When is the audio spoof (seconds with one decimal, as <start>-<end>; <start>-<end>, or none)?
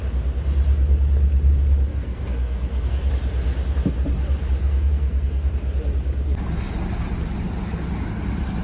1.9-3.1; 4.6-5.5